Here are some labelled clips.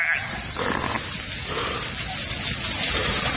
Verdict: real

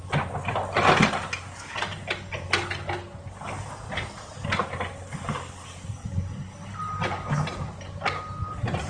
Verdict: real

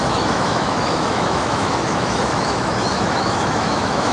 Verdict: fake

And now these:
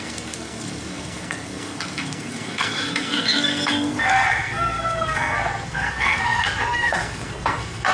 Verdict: fake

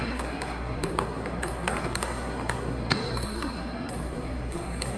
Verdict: fake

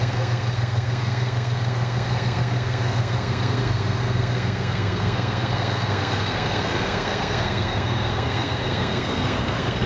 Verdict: fake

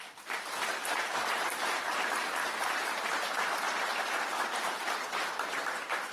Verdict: fake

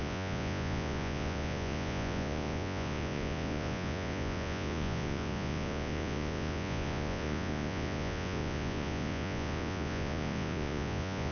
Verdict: fake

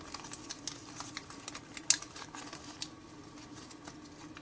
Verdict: real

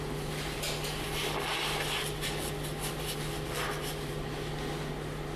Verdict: real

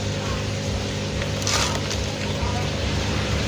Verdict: real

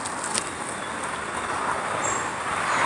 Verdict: real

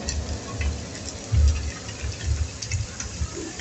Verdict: real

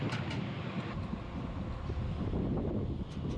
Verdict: real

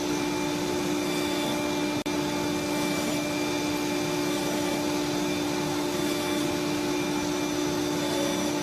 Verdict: real